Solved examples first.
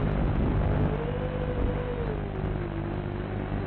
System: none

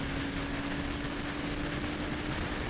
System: none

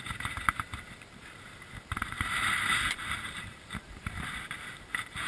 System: vocoder, BigVGAN v2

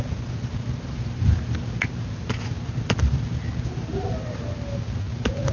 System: none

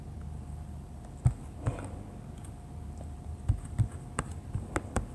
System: none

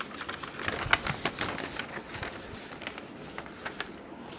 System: none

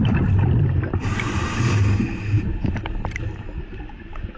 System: none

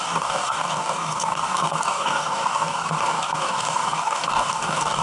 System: codec, DAC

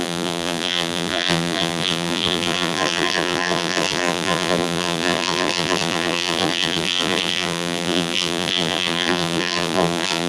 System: vocoder, BigVGAN v2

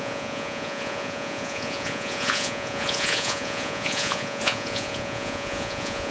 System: vocoder, Vocos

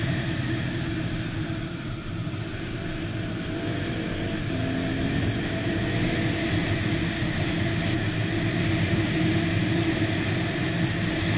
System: none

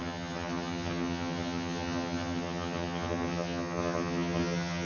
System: vocoder, HiFi-GAN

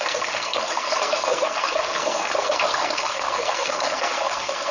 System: codec, SNAC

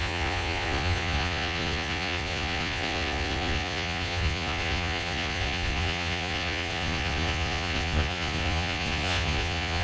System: vocoder, Vocos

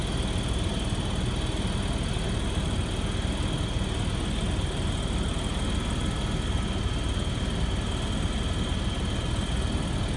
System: none